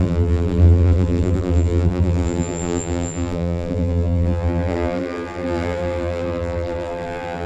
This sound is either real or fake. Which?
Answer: fake